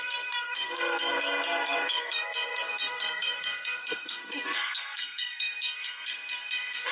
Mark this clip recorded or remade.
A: remade